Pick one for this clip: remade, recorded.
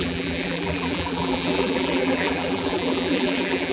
remade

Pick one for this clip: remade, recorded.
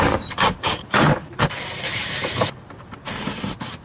remade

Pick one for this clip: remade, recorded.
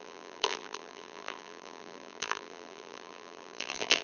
remade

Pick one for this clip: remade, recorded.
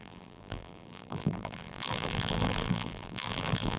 remade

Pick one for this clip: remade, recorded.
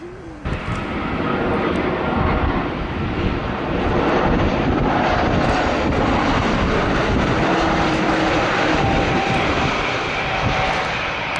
remade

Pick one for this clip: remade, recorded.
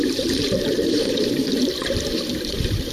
remade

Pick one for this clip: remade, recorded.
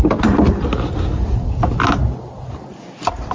recorded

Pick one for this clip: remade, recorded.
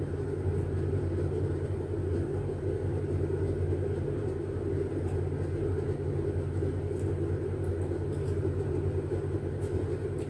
recorded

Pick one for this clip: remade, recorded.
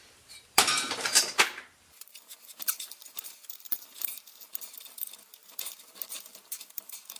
remade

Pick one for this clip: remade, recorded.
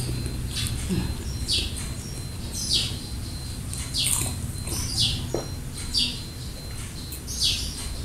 recorded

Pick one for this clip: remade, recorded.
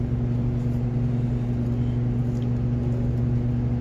recorded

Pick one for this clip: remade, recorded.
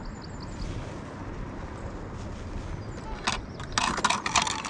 recorded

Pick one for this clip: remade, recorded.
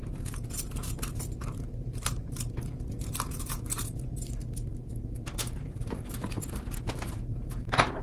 remade